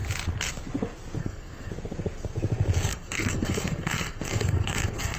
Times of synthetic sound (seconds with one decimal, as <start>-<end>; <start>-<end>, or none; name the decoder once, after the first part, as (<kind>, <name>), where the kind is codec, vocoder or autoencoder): 1.2-1.7 (codec, SNAC); 2.9-5.2